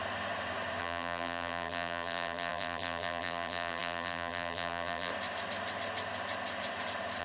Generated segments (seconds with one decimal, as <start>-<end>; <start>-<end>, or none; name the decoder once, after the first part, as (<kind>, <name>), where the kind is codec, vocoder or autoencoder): 0.8-5.1 (vocoder, BigVGAN v2)